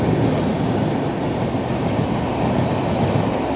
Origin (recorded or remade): recorded